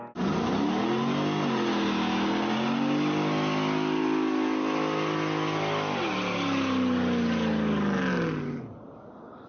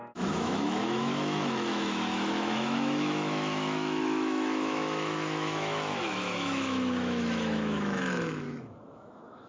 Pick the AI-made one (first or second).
second